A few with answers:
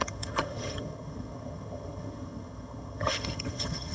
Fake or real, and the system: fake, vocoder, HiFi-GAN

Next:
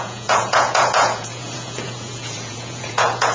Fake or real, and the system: fake, vocoder, Vocos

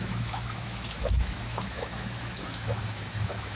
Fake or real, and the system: fake, autoencoder, DAC-VAE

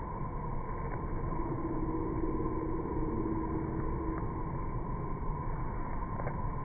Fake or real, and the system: real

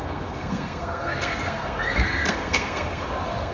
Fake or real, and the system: fake, codec, SNAC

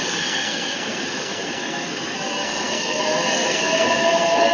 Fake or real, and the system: fake, codec, SNAC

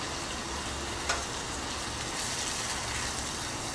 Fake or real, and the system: real